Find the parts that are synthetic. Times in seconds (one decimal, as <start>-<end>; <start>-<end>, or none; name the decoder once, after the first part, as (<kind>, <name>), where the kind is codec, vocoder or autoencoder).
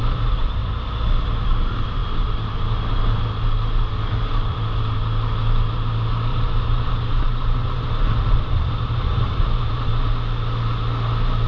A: 6.3-10.1 (vocoder, BigVGAN v2)